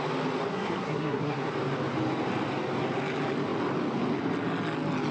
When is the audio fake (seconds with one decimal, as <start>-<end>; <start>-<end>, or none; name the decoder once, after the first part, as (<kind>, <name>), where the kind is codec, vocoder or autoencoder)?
0.5-1.5 (codec, SNAC)